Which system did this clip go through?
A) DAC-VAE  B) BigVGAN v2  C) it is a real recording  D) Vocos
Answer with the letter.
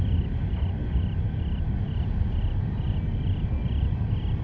C